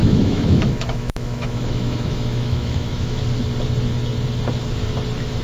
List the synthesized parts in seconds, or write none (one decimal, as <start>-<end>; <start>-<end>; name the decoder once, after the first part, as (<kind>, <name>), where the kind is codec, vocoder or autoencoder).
0.0-3.2 (autoencoder, DAC-VAE)